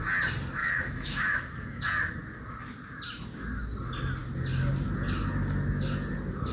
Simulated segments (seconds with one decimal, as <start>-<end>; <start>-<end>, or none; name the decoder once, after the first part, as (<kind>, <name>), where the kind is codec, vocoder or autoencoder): 0.6-1.8 (autoencoder, DAC-VAE)